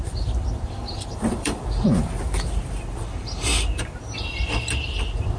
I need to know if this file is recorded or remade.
remade